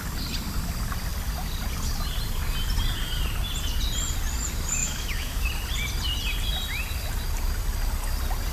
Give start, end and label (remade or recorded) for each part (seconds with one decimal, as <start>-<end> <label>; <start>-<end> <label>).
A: 0.0-4.8 recorded; 4.8-5.5 remade; 5.5-8.5 recorded